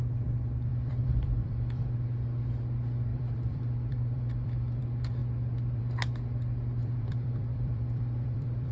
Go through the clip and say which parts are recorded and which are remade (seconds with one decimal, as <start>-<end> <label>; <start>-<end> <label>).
0.0-0.7 recorded; 0.7-1.9 remade; 1.9-3.1 recorded; 3.1-4.8 remade; 4.8-6.8 recorded; 6.8-8.7 remade